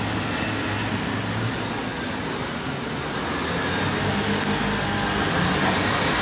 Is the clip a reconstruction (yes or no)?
no